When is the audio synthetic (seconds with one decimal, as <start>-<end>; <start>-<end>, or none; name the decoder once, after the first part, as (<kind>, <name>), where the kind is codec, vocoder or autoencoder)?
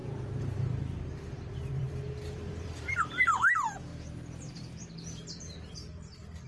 0.0-6.5 (vocoder, BigVGAN v2)